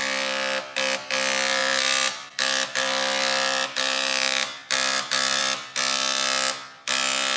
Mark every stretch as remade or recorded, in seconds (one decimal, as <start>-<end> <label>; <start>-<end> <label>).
0.0-7.4 remade